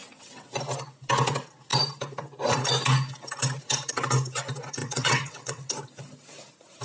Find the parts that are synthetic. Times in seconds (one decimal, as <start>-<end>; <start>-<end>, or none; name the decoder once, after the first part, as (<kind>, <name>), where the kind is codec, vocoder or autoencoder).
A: 0.0-0.6 (vocoder, WaveNeXt); 4.8-5.7